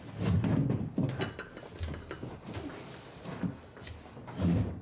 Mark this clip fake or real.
real